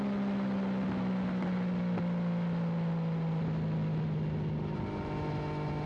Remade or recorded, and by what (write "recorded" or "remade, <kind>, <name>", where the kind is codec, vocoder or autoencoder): recorded